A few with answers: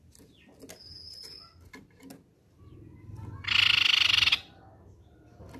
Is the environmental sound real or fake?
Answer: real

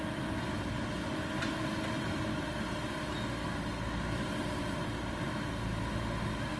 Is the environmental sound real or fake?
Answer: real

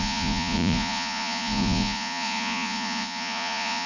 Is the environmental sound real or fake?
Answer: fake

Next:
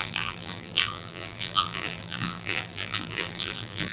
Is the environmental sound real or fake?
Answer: fake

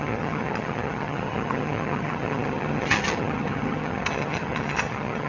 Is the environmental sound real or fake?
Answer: fake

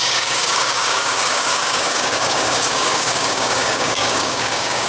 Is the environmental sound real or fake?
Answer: fake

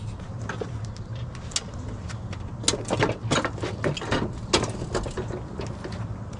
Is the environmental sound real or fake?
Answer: real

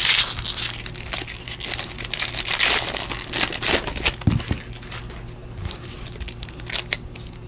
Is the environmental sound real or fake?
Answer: real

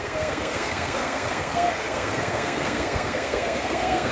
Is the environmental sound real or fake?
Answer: fake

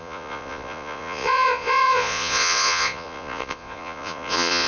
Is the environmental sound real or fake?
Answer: fake